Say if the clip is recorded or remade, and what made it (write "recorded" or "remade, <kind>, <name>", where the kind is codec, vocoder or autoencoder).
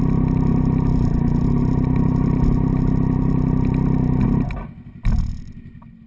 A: recorded